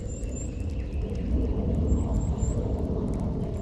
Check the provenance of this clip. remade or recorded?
recorded